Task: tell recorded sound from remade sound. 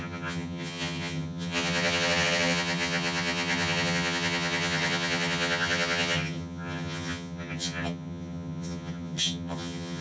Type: remade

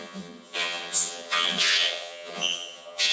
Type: remade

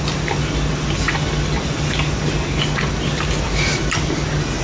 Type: recorded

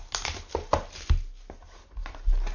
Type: recorded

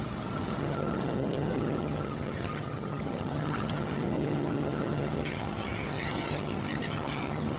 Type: remade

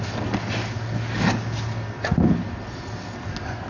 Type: recorded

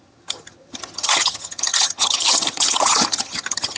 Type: remade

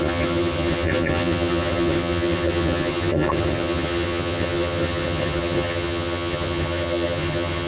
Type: remade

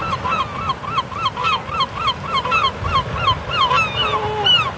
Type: recorded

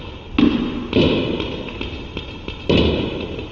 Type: recorded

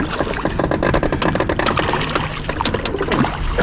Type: recorded